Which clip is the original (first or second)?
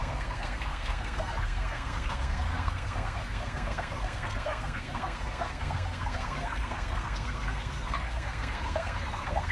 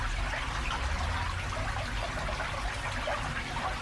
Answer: second